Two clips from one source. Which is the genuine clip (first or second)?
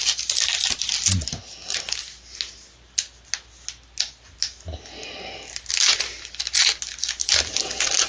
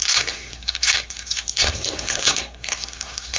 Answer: first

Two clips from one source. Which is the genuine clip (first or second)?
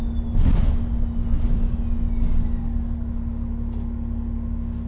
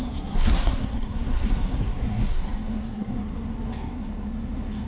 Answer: first